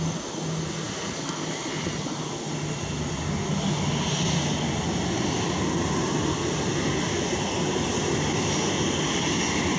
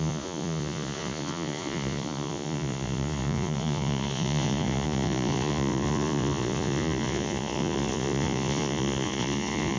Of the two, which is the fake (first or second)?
second